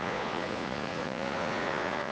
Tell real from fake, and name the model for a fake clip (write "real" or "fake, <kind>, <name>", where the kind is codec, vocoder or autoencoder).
fake, vocoder, Vocos